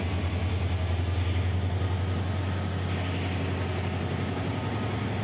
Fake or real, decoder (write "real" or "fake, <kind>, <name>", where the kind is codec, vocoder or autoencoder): real